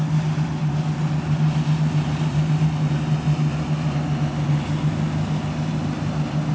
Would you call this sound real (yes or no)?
yes